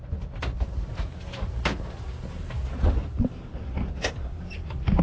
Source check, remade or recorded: recorded